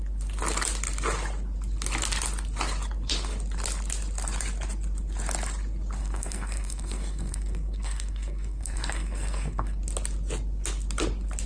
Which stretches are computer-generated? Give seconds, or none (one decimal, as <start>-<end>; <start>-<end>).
6.0-9.8